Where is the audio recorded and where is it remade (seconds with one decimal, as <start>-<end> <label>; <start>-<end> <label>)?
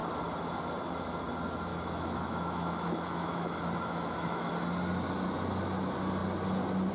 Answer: 0.0-1.7 recorded; 1.7-4.5 remade; 4.5-6.9 recorded